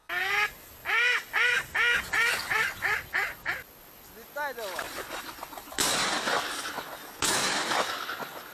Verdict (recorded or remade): recorded